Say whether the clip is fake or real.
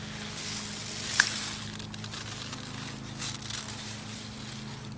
real